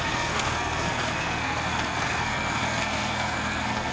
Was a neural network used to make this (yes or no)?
yes